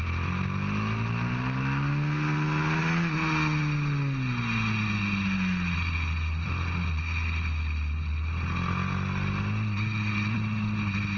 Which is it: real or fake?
real